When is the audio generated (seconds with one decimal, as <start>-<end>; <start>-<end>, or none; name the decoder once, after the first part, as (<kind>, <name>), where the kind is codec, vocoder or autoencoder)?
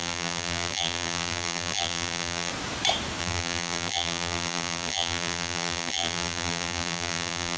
0.0-2.5 (vocoder, BigVGAN v2); 3.2-7.6